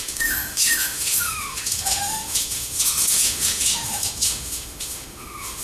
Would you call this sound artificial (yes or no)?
yes